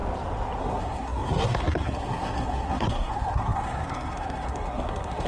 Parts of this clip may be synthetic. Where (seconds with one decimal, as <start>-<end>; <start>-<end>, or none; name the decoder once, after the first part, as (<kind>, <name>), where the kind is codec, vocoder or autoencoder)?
0.6-5.3 (codec, SNAC)